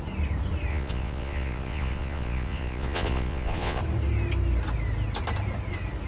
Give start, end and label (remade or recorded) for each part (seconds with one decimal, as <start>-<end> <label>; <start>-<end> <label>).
0.0-0.7 recorded; 0.7-3.8 remade; 3.8-6.1 recorded

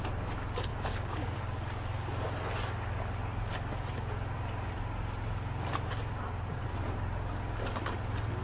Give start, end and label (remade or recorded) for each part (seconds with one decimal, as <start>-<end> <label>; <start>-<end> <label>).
0.0-0.7 recorded; 0.7-1.4 remade; 1.4-8.4 recorded

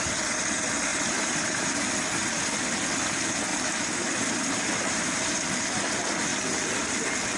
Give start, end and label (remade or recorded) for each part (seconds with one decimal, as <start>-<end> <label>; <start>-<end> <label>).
0.0-0.9 recorded; 0.9-1.7 remade; 1.7-3.5 recorded; 3.5-5.4 remade; 5.4-7.4 recorded

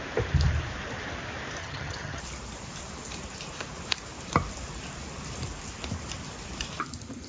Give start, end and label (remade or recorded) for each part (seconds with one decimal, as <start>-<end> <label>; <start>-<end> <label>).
0.0-1.6 recorded; 1.6-2.2 remade; 2.2-7.3 recorded